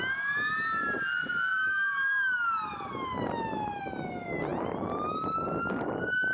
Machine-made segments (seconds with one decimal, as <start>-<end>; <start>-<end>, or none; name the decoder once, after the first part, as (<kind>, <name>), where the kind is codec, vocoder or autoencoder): 4.5-5.0 (vocoder, BigVGAN v2)